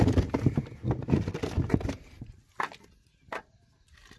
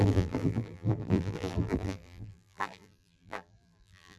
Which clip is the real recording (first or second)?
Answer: first